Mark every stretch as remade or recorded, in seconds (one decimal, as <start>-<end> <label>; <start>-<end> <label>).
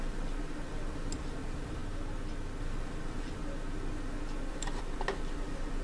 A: 0.0-1.8 remade; 1.8-2.6 recorded; 2.6-3.4 remade; 3.4-4.5 recorded; 4.5-5.8 remade